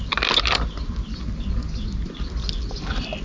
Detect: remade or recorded recorded